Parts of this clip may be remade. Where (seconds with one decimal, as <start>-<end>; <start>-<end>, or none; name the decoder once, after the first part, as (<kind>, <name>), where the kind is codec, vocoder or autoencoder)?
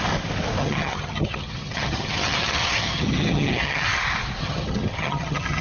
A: 0.6-4.0 (vocoder, HiFi-GAN); 4.4-5.6